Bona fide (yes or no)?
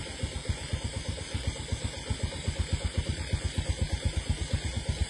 yes